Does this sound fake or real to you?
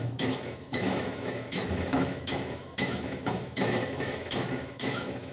fake